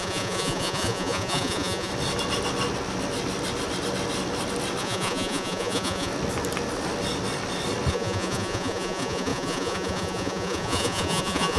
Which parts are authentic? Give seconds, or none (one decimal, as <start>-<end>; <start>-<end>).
1.9-4.8; 6.1-7.9